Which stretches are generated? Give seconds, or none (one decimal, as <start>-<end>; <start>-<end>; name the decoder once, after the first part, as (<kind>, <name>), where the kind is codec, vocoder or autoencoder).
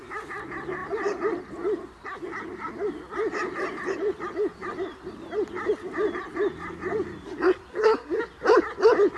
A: 7.7-8.2 (codec, SNAC)